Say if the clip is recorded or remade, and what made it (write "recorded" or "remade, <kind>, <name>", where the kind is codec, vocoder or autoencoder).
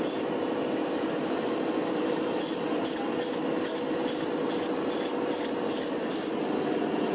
recorded